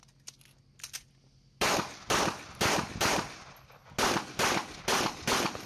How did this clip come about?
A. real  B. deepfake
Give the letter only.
A